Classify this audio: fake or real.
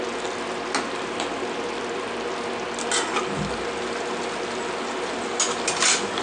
real